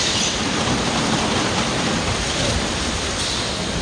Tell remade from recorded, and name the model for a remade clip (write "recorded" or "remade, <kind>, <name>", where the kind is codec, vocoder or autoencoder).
recorded